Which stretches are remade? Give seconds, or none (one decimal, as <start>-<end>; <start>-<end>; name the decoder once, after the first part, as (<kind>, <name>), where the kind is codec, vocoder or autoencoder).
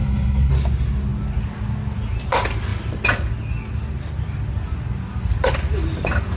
0.0-0.5 (codec, HILCodec)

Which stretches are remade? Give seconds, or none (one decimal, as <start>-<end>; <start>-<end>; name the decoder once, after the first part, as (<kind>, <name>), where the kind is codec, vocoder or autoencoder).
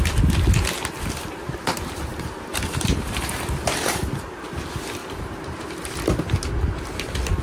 1.4-4.1 (vocoder, BigVGAN v2); 5.0-5.7